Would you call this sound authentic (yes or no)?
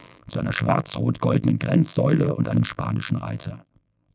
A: no